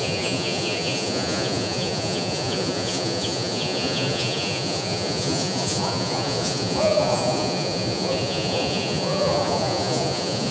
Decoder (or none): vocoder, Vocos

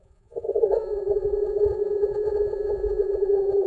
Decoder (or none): vocoder, Vocos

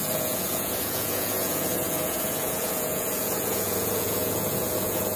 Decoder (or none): vocoder, Vocos